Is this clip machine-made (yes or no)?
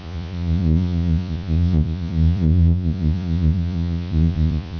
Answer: yes